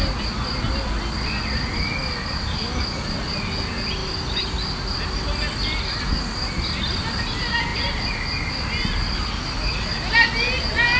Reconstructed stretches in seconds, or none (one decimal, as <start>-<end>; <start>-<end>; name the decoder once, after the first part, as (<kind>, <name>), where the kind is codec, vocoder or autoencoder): none